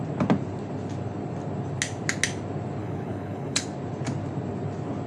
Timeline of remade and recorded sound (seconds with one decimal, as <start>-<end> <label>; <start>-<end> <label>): 0.0-2.8 recorded; 2.8-3.6 remade; 3.6-5.1 recorded